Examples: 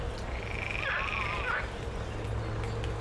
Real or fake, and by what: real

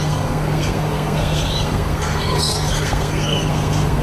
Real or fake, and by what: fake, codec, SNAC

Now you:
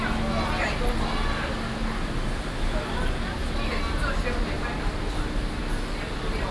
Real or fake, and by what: real